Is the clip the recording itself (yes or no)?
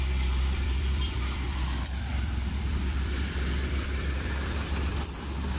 no